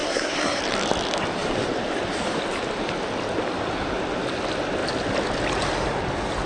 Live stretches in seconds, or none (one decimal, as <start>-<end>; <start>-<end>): 0.6-6.5